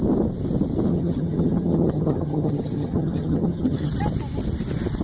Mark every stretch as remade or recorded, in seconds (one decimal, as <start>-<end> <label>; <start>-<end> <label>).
0.0-0.9 recorded; 0.9-3.9 remade; 3.9-5.0 recorded